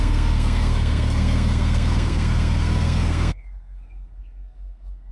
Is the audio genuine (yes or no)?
no